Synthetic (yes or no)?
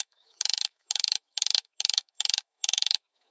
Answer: yes